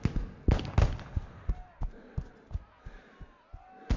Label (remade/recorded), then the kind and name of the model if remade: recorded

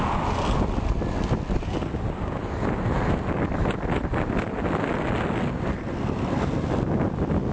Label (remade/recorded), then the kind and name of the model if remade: recorded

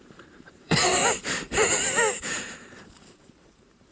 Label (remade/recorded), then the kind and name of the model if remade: remade, vocoder, BigVGAN v2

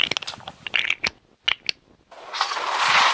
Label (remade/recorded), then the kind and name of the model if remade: recorded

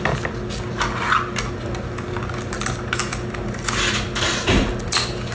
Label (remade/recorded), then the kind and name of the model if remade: recorded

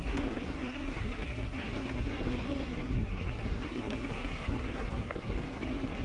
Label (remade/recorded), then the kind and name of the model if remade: remade, codec, SNAC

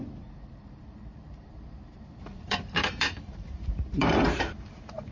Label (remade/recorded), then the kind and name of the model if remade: remade, vocoder, BigVGAN v2